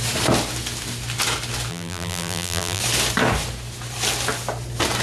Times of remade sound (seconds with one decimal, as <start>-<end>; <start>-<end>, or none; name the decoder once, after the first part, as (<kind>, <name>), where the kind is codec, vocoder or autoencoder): 1.7-2.8 (vocoder, BigVGAN v2)

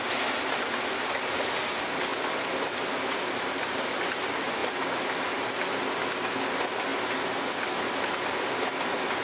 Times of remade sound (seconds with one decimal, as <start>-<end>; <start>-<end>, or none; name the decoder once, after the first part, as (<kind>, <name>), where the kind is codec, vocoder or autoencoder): none

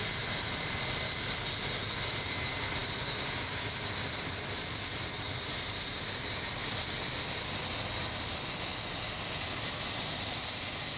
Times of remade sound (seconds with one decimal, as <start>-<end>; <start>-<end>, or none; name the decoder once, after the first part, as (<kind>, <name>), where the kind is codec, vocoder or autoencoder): 6.6-7.2 (vocoder, BigVGAN v2)

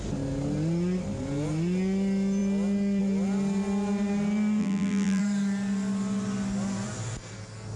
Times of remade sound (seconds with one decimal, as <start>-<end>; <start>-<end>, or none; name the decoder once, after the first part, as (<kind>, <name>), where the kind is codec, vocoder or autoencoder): 4.6-5.2 (vocoder, BigVGAN v2)

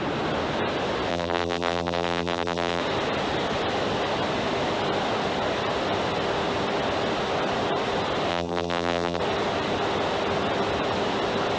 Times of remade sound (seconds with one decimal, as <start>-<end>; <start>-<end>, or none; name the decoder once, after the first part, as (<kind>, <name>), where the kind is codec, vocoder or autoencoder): 1.1-2.8 (vocoder, BigVGAN v2); 8.3-9.2

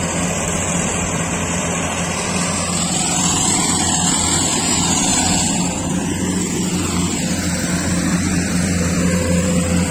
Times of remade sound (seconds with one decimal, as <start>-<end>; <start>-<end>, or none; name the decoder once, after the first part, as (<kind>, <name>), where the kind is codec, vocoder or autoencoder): none

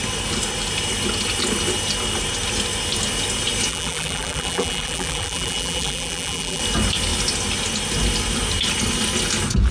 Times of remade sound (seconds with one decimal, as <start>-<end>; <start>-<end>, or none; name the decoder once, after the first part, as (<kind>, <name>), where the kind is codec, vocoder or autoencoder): 3.7-6.6 (vocoder, BigVGAN v2)